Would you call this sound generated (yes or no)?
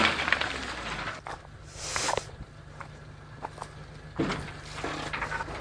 no